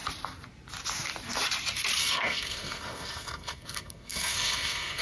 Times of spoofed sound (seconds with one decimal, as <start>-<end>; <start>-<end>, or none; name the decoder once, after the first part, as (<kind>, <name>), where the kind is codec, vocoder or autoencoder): 2.0-5.0 (codec, SNAC)